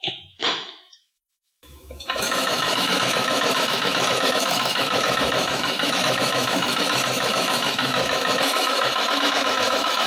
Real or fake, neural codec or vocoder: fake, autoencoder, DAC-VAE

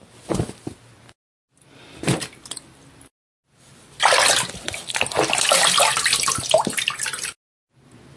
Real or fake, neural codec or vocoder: real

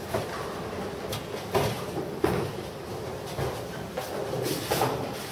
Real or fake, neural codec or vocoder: real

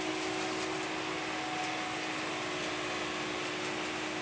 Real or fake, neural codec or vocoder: real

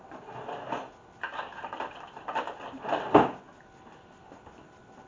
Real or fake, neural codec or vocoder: real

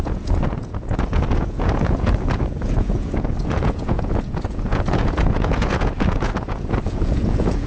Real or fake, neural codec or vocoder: fake, vocoder, Vocos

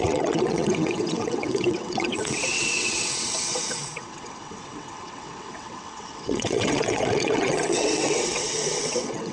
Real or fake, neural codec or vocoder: fake, vocoder, WaveNeXt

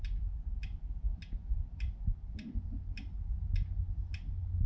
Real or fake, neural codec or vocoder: real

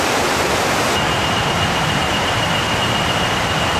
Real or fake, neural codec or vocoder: real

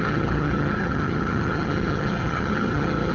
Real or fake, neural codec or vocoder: fake, vocoder, HiFi-GAN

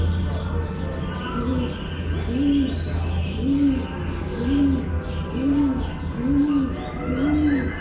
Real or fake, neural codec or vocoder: real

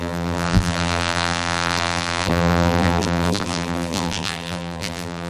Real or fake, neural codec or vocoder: fake, vocoder, BigVGAN v2